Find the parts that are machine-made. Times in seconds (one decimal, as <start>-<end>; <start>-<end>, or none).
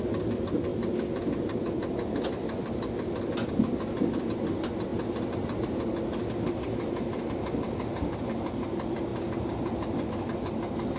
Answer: none